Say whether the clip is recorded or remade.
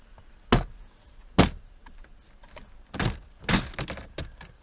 recorded